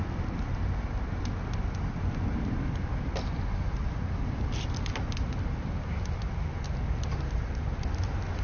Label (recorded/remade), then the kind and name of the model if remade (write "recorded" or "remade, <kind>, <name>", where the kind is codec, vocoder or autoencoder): recorded